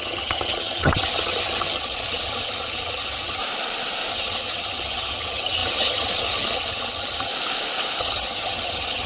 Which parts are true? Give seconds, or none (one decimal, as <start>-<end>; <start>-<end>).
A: 3.4-4.1; 7.3-8.0